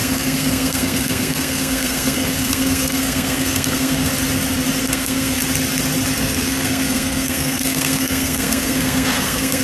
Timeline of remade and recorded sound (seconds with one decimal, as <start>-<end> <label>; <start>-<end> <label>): 0.0-4.1 remade; 4.1-4.8 recorded; 4.8-5.4 remade; 5.4-6.2 recorded; 6.2-9.6 remade